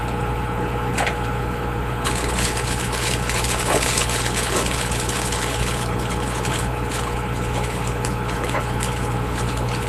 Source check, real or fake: fake